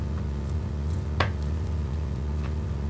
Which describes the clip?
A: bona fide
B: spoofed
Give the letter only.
B